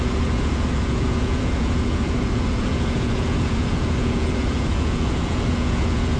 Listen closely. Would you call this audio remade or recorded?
remade